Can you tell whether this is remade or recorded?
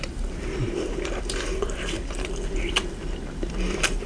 remade